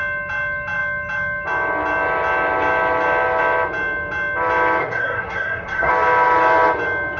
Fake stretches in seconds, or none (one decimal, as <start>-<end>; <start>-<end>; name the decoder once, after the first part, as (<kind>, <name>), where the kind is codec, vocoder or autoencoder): 4.8-5.9 (codec, SNAC)